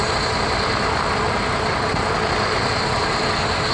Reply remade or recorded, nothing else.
recorded